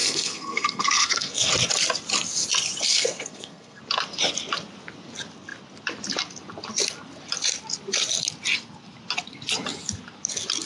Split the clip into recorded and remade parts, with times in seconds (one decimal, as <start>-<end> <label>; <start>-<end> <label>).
0.0-1.5 remade; 1.5-2.9 recorded; 2.9-3.8 remade; 3.8-10.7 recorded

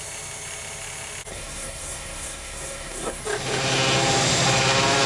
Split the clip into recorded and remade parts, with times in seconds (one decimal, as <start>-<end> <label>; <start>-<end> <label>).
0.0-1.3 recorded; 1.3-3.2 remade; 3.2-5.1 recorded

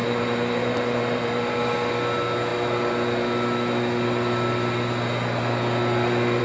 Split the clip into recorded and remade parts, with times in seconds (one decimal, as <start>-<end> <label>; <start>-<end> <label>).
0.0-1.5 remade; 1.5-6.4 recorded

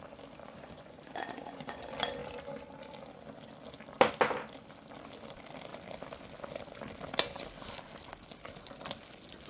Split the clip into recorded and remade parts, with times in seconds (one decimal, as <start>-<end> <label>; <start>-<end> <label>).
0.0-0.4 recorded; 0.4-1.8 remade; 1.8-9.5 recorded

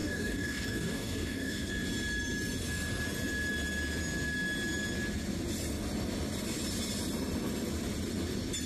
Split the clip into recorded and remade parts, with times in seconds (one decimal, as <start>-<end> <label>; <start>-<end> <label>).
0.0-1.7 remade; 1.7-8.7 recorded

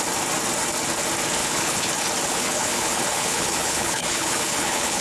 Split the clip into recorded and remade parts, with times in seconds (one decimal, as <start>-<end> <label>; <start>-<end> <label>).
0.0-1.4 recorded; 1.4-1.9 remade; 1.9-2.3 recorded; 2.3-5.0 remade

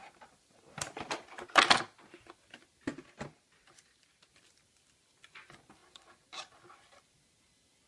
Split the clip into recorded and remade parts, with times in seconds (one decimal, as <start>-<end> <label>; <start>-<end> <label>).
0.0-1.1 remade; 1.1-2.9 recorded; 2.9-4.3 remade; 4.3-5.8 recorded; 5.8-6.5 remade; 6.5-7.9 recorded

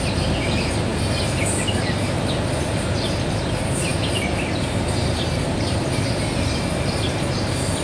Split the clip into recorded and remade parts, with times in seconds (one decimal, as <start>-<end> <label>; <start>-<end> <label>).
0.0-7.8 recorded